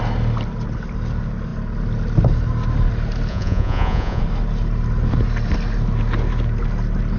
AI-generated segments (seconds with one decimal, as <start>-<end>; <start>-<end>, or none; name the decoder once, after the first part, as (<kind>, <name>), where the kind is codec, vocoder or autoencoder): 3.3-4.2 (vocoder, Vocos)